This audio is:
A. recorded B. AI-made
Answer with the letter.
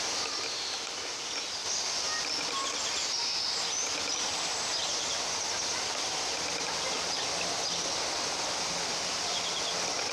A